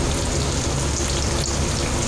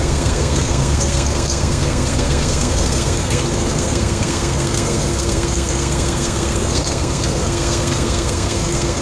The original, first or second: first